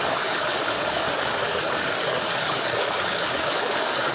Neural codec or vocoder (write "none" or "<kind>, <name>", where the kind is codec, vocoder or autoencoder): codec, DAC